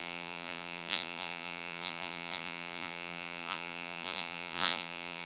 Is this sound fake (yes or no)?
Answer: yes